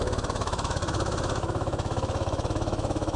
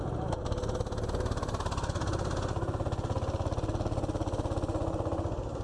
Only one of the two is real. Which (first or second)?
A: second